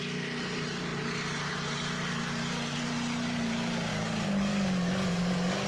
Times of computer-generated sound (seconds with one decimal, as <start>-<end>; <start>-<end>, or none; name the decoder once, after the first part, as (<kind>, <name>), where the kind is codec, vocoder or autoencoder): 3.9-5.7 (codec, DAC)